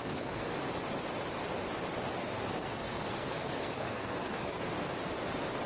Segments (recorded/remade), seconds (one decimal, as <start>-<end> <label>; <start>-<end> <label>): 0.0-0.6 remade; 0.6-2.5 recorded; 2.5-4.7 remade; 4.7-5.7 recorded